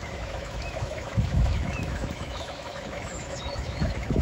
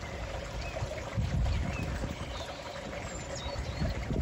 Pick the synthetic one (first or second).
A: first